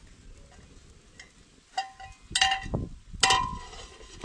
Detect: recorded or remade recorded